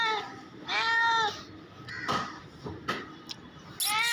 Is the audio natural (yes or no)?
yes